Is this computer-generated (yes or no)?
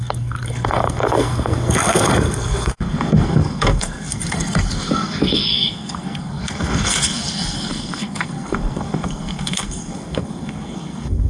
yes